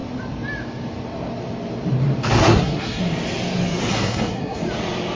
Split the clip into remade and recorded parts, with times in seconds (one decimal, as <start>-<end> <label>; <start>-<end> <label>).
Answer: 0.0-2.4 recorded; 2.4-3.0 remade; 3.0-3.9 recorded; 3.9-4.6 remade; 4.6-5.1 recorded